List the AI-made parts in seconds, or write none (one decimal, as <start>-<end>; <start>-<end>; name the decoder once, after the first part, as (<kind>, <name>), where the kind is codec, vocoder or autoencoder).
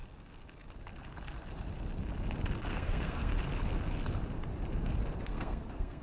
2.7-3.3 (codec, SNAC); 5.2-6.0